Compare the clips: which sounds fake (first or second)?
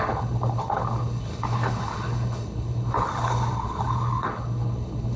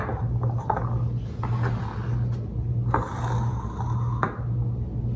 first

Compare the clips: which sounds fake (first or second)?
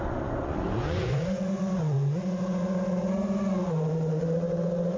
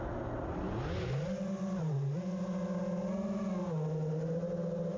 first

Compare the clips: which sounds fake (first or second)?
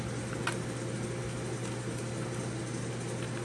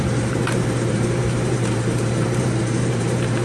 second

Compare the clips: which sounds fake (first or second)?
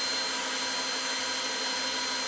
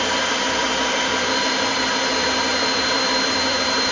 second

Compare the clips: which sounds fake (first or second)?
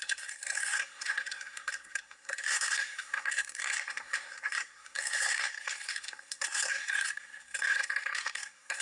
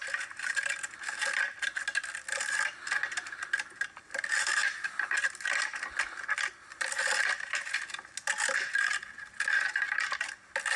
first